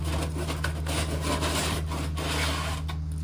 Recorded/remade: recorded